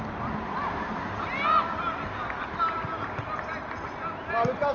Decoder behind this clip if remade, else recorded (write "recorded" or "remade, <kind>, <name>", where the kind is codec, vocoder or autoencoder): recorded